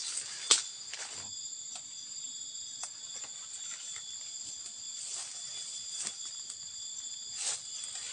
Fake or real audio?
real